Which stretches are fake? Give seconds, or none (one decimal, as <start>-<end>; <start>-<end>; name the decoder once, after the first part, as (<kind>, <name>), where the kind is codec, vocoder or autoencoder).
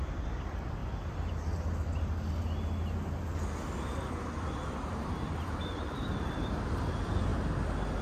0.0-0.8 (vocoder, BigVGAN v2); 4.9-7.3